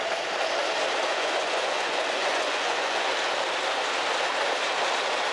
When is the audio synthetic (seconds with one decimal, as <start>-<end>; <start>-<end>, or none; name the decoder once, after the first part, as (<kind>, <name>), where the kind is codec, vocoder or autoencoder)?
1.1-3.1 (vocoder, Vocos)